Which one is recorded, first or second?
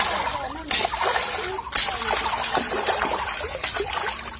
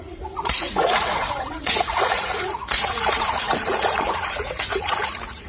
first